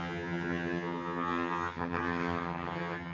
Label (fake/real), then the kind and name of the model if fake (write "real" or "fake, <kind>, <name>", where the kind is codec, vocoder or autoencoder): fake, vocoder, HiFi-GAN